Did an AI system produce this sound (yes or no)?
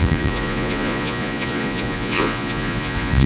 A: yes